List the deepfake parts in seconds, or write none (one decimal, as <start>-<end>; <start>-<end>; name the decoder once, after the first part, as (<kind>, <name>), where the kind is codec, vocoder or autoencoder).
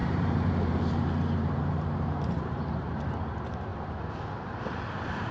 0.0-3.7 (vocoder, BigVGAN v2); 4.4-5.3